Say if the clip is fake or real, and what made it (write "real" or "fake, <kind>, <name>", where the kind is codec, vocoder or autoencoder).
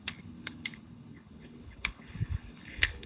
fake, codec, HILCodec